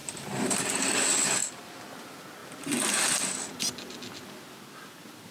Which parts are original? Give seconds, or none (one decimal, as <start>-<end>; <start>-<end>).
0.6-1.4; 1.9-5.3